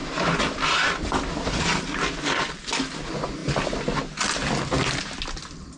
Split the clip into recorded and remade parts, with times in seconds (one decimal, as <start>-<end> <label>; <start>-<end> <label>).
0.0-5.8 recorded

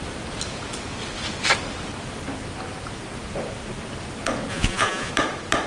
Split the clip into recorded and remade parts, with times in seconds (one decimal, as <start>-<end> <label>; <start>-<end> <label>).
0.0-4.5 recorded; 4.5-5.1 remade; 5.1-5.7 recorded

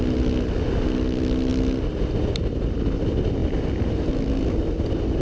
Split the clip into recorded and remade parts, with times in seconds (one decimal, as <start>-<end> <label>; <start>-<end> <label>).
0.0-3.4 recorded; 3.4-4.1 remade; 4.1-5.2 recorded

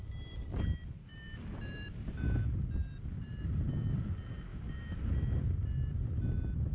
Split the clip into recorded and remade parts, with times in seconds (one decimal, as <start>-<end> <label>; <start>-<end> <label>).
0.0-1.1 recorded; 1.1-3.4 remade; 3.4-6.7 recorded

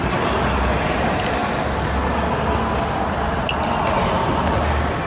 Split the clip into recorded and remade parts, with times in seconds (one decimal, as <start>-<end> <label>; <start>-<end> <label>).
0.0-5.1 recorded

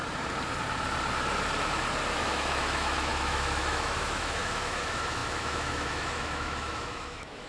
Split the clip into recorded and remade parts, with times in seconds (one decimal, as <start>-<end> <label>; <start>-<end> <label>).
0.0-2.2 recorded; 2.2-7.5 remade